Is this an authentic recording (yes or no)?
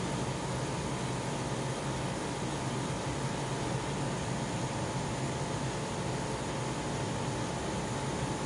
yes